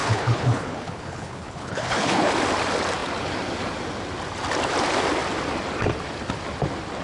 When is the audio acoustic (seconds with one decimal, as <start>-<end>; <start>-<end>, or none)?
2.3-7.0